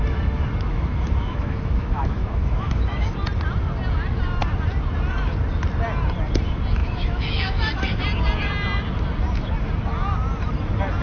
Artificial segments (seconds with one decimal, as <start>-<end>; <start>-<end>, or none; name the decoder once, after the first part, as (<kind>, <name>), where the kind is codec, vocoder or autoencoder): 0.7-3.1 (autoencoder, DAC-VAE); 6.8-8.0

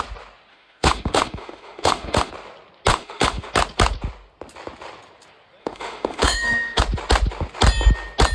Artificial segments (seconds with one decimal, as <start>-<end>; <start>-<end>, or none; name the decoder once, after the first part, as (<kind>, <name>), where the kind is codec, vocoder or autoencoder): 0.5-2.3 (autoencoder, DAC-VAE); 2.9-3.5; 5.6-6.8

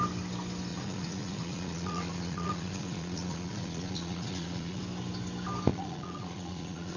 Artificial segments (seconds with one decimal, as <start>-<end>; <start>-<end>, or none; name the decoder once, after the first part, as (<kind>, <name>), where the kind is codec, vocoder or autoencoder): 0.7-4.8 (vocoder, Vocos); 5.7-7.0

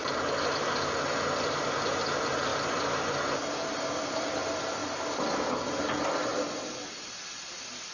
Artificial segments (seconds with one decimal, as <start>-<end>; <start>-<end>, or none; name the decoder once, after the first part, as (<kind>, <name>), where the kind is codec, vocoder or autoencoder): 0.6-2.5 (vocoder, BigVGAN v2); 3.3-4.8; 7.2-7.9